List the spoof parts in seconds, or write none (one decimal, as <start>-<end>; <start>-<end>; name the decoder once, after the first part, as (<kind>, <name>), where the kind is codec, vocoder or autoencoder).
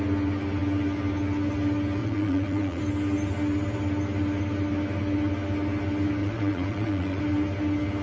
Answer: 2.0-2.8 (vocoder, Vocos); 6.2-7.2